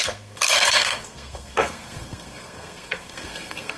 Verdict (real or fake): fake